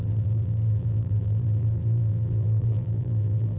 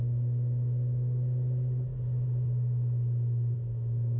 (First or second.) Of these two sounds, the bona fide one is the second